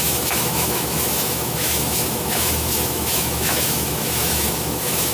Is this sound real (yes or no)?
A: no